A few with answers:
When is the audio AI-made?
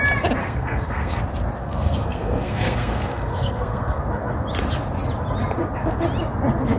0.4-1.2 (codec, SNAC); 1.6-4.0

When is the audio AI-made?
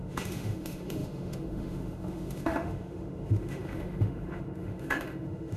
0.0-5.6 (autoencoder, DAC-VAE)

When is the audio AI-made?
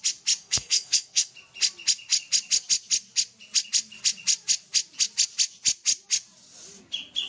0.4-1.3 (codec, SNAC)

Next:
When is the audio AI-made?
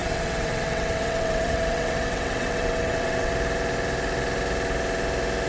0.0-3.3 (vocoder, WaveNeXt)